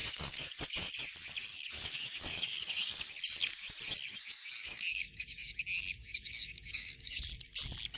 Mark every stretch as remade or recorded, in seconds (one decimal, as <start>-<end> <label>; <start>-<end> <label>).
0.0-0.6 remade; 0.6-1.5 recorded; 1.5-3.2 remade; 3.2-4.1 recorded; 4.1-5.5 remade; 5.5-6.0 recorded; 6.0-7.2 remade; 7.2-8.0 recorded